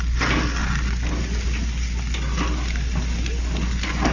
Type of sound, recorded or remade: recorded